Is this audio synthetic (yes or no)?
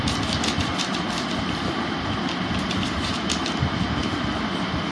no